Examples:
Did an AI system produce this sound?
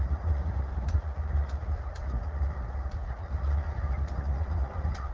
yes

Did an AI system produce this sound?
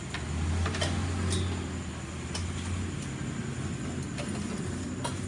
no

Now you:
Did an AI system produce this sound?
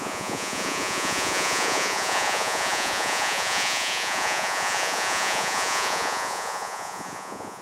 yes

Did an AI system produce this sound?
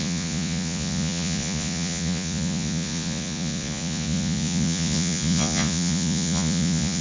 yes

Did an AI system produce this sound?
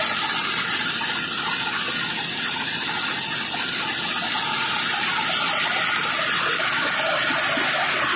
no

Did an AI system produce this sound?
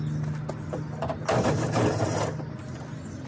no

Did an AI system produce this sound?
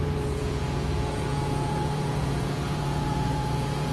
yes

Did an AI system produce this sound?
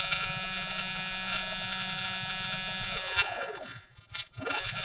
yes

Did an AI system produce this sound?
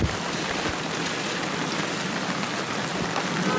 no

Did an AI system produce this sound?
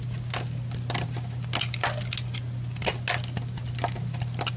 no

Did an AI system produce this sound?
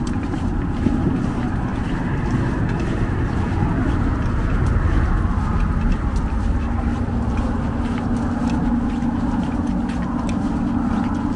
no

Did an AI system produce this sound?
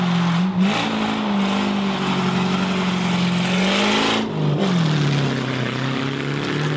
no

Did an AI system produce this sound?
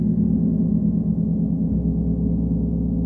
no